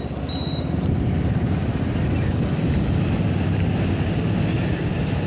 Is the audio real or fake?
real